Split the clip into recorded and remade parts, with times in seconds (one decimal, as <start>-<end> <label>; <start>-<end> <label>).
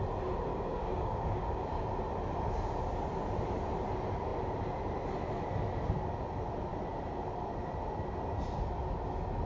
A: 0.0-0.5 recorded; 0.5-1.8 remade; 1.8-9.5 recorded